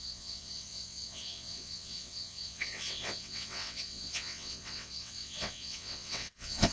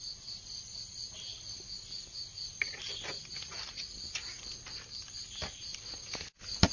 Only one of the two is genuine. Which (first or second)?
second